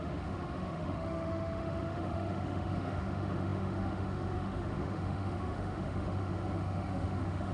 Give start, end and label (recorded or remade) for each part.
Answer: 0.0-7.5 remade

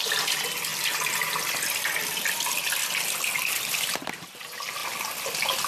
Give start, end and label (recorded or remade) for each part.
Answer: 0.0-0.7 recorded; 0.7-1.6 remade; 1.6-2.8 recorded; 2.8-4.1 remade; 4.1-4.8 recorded; 4.8-5.7 remade

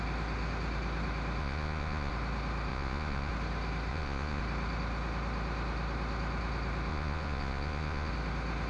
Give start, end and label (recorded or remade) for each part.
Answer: 0.0-1.4 recorded; 1.4-2.1 remade; 2.1-2.7 recorded; 2.7-3.3 remade; 3.3-3.9 recorded; 3.9-4.4 remade; 4.4-6.9 recorded; 6.9-8.1 remade; 8.1-8.7 recorded

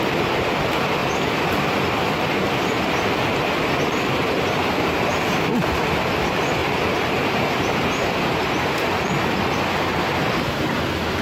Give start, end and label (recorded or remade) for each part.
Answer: 0.0-6.6 recorded; 6.6-8.5 remade; 8.5-11.2 recorded

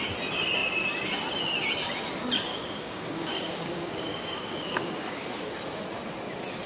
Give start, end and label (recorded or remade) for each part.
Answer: 0.0-2.5 recorded; 2.5-5.3 remade; 5.3-6.7 recorded

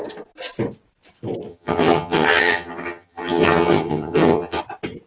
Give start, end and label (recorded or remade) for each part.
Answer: 0.0-1.5 recorded; 1.5-4.6 remade; 4.6-5.1 recorded

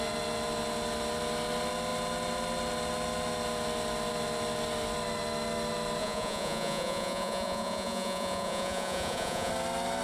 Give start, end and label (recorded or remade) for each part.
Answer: 0.0-6.0 recorded; 6.0-9.5 remade; 9.5-10.0 recorded

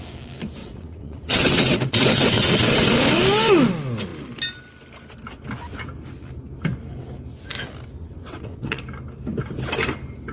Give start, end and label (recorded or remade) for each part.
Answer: 0.0-0.6 recorded; 0.6-2.9 remade; 2.9-8.0 recorded; 8.0-8.8 remade; 8.8-10.3 recorded